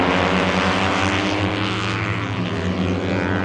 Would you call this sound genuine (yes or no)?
yes